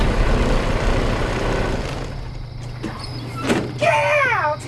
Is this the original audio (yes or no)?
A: yes